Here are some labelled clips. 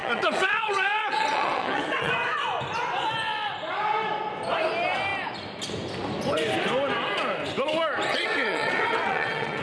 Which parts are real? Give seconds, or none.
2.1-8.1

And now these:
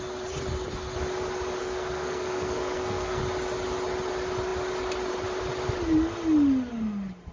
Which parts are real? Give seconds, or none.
0.0-1.6; 3.2-7.3

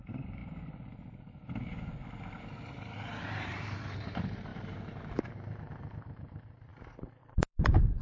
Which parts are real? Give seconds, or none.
0.4-2.4; 6.7-7.2

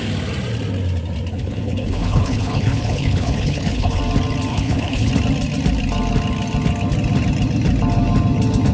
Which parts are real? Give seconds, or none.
0.0-1.3; 4.0-4.5; 5.1-8.7